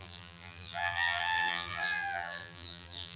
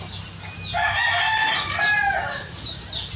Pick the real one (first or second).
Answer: second